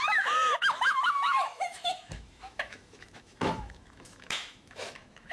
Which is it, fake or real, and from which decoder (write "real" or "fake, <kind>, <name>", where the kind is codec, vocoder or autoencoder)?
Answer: fake, autoencoder, DAC-VAE